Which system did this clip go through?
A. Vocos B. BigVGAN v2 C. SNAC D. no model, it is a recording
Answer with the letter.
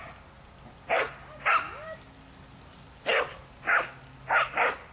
D